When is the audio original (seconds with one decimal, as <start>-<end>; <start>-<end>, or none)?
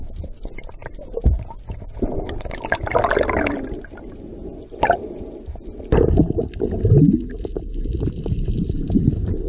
0.0-9.5